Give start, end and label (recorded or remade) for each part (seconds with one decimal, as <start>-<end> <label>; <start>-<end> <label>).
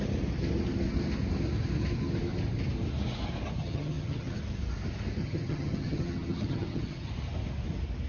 0.0-3.6 recorded; 3.6-4.4 remade; 4.4-5.2 recorded; 5.2-7.1 remade; 7.1-8.1 recorded